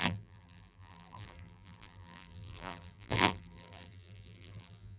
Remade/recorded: remade